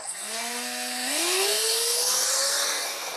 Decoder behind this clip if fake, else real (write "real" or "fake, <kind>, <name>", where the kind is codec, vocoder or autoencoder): fake, codec, SNAC